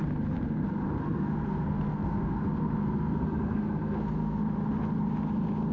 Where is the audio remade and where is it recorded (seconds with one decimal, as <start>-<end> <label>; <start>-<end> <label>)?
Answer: 0.0-1.0 recorded; 1.0-4.4 remade; 4.4-5.7 recorded

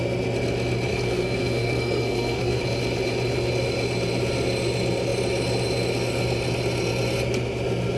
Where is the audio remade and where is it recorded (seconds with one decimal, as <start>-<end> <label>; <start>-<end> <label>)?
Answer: 0.0-0.9 recorded; 0.9-2.6 remade; 2.6-8.0 recorded

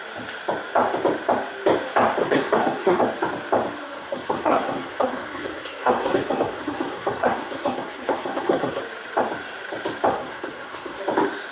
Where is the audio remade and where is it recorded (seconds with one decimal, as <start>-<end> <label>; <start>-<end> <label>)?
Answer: 0.0-2.2 recorded; 2.2-3.0 remade; 3.0-3.8 recorded; 3.8-8.8 remade; 8.8-10.1 recorded; 10.1-11.0 remade; 11.0-11.5 recorded